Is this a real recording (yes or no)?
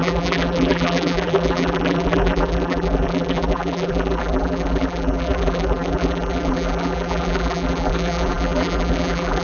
no